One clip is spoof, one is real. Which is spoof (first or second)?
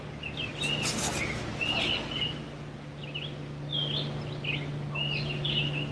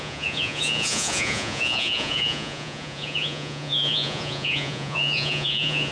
second